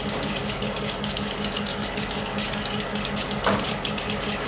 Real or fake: fake